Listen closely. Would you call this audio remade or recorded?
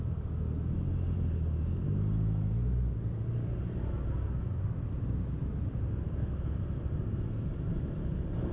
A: recorded